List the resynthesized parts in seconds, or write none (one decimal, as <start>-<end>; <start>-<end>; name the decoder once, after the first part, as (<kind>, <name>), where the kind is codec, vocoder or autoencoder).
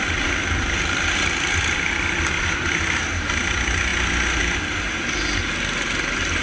none